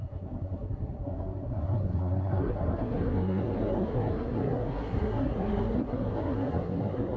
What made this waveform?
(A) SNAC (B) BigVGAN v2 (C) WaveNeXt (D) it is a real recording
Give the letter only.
A